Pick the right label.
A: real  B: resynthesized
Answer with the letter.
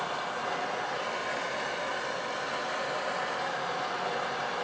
A